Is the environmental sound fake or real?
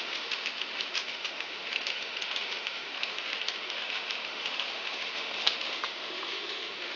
fake